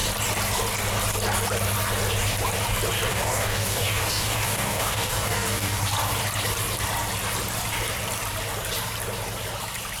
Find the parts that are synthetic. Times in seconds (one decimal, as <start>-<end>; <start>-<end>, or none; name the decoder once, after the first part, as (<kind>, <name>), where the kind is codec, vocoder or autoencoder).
3.1-5.8 (codec, DAC)